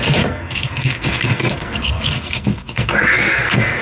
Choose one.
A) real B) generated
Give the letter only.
B